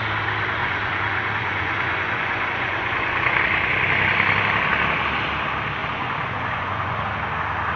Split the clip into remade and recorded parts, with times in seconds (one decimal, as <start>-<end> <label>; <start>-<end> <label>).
0.0-0.6 recorded; 0.6-3.4 remade; 3.4-5.8 recorded; 5.8-7.0 remade; 7.0-7.8 recorded